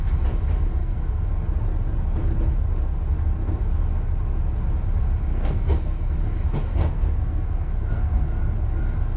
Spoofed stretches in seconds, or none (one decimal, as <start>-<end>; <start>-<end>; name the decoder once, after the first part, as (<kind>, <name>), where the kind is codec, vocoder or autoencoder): 0.8-1.3 (codec, SNAC); 5.3-6.2; 6.7-8.4